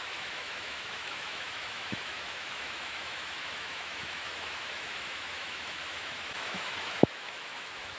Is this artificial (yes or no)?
yes